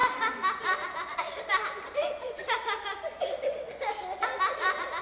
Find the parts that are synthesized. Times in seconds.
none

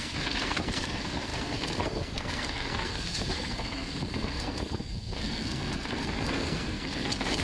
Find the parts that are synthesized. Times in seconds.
0.0-7.4 (codec, SNAC)

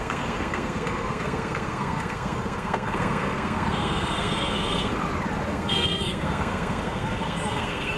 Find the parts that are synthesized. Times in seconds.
0.0-4.9 (codec, SNAC); 5.5-8.0

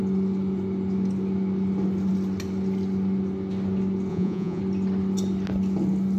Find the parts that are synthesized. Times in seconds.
4.1-4.6 (vocoder, Vocos)

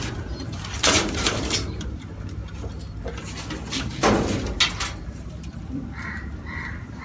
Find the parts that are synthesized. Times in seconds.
0.0-2.4 (vocoder, BigVGAN v2); 5.5-7.0

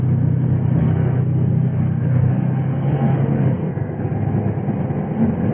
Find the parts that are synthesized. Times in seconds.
0.8-4.1 (codec, SNAC)

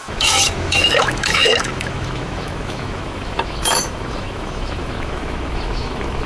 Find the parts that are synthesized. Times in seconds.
0.0-6.3 (autoencoder, DAC-VAE)